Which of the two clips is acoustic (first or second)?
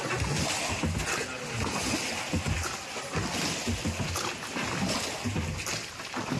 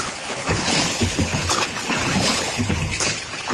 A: first